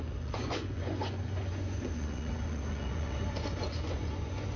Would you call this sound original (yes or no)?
no